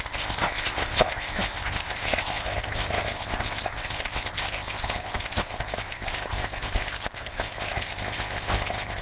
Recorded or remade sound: remade